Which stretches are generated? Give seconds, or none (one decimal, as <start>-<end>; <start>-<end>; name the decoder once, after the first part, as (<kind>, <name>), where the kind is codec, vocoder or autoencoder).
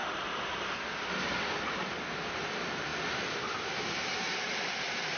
none